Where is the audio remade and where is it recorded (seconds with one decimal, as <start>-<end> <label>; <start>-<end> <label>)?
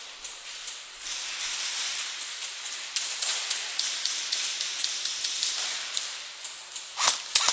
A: 0.0-7.5 recorded